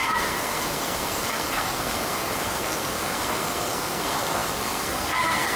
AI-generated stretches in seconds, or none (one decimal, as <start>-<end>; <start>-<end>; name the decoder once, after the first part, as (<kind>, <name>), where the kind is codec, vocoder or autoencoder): 0.0-5.6 (codec, SNAC)